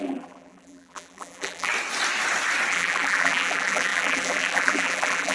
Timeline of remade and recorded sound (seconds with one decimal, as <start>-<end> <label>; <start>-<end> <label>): 0.0-1.7 remade; 1.7-2.7 recorded; 2.7-5.3 remade